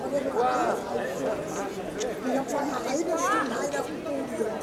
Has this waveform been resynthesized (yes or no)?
no